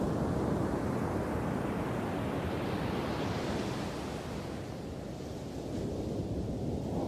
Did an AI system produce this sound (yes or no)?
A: no